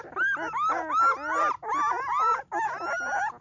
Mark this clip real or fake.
real